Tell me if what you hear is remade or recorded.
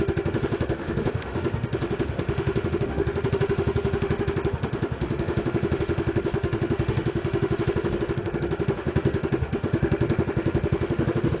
remade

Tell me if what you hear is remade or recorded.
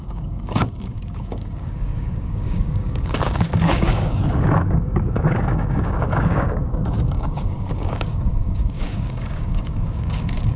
remade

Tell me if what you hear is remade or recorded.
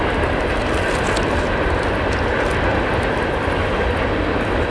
recorded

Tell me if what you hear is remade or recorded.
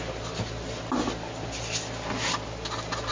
recorded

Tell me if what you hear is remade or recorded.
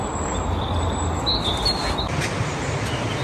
recorded